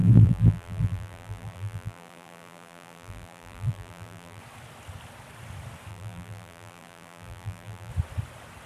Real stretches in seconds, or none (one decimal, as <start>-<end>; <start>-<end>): 4.4-5.9; 7.9-8.7